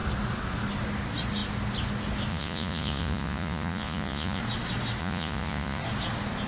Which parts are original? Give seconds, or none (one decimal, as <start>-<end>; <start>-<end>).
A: 0.0-2.3; 4.4-5.0; 5.8-6.5